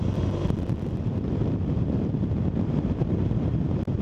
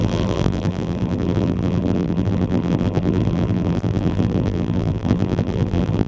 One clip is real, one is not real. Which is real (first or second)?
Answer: first